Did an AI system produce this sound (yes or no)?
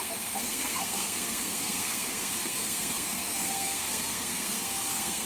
yes